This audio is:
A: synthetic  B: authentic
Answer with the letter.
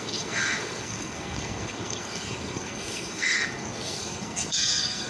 A